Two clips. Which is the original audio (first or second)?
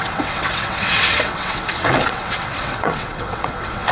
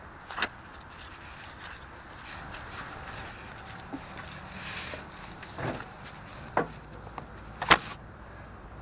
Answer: second